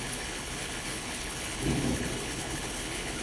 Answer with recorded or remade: remade